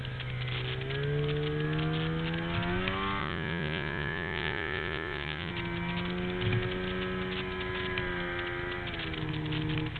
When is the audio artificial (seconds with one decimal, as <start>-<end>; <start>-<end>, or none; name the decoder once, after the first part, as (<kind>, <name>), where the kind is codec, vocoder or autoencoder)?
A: 3.2-5.5 (vocoder, Vocos)